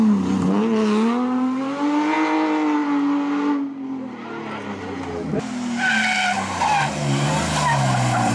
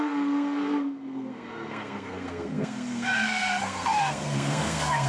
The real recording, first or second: first